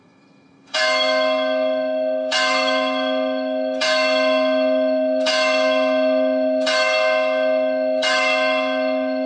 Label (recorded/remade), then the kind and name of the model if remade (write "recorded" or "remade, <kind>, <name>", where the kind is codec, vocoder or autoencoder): remade, autoencoder, DAC-VAE